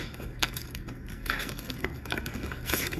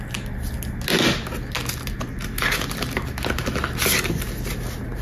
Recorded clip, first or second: second